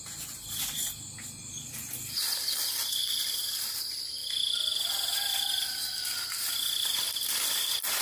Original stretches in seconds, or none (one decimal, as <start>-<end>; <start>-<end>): 0.0-3.0; 3.7-8.0